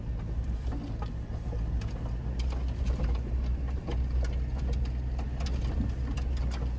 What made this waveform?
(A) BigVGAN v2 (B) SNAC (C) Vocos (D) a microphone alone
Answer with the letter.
D